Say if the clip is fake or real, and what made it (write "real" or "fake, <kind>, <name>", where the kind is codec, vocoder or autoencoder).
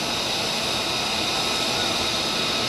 real